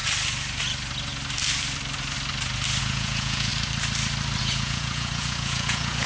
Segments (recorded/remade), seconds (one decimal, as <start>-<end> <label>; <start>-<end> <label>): 0.0-2.8 recorded; 2.8-3.5 remade; 3.5-4.4 recorded; 4.4-6.1 remade